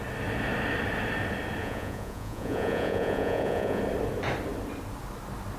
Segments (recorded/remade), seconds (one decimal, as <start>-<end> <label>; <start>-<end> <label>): 0.0-1.6 recorded; 1.6-3.8 remade; 3.8-5.6 recorded